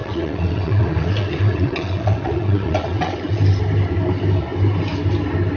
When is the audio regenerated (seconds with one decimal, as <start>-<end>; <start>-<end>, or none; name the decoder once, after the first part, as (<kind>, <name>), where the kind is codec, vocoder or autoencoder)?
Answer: 0.0-3.4 (vocoder, WaveNeXt)